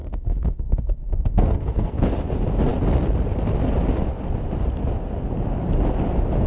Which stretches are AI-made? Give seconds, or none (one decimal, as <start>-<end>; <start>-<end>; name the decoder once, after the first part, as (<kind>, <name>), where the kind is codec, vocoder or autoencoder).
0.0-2.0 (codec, SNAC)